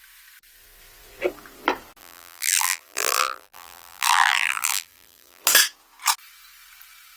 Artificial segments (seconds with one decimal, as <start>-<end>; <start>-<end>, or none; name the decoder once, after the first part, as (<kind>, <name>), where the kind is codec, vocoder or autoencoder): 2.0-5.4 (vocoder, BigVGAN v2)